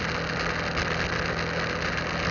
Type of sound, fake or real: real